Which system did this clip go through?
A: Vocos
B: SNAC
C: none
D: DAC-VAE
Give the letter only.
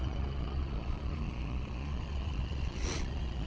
A